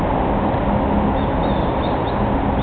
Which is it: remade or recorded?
recorded